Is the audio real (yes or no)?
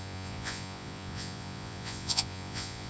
no